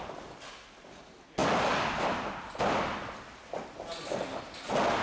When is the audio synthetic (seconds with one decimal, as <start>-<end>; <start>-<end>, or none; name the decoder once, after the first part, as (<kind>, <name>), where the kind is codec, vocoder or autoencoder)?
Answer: none